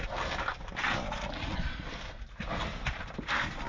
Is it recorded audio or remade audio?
recorded